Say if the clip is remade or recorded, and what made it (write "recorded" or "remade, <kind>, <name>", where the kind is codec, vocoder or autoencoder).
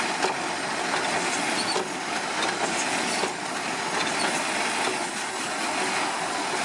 recorded